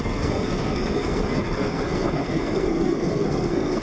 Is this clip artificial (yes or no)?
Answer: yes